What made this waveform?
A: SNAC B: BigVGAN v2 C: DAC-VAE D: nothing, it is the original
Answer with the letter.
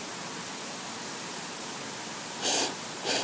D